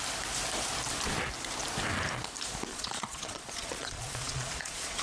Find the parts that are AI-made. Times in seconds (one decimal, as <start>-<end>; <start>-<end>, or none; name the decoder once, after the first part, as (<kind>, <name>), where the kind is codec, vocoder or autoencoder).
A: 2.7-5.0 (vocoder, Vocos)